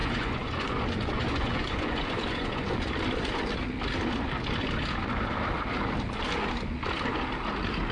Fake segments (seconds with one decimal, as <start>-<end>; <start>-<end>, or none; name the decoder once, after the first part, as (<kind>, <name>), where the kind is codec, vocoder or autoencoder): 0.0-2.9 (vocoder, Vocos)